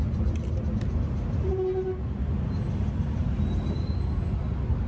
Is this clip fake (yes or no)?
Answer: no